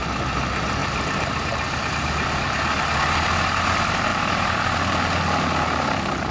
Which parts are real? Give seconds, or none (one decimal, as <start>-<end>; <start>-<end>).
0.0-0.8; 1.9-4.1; 4.6-6.3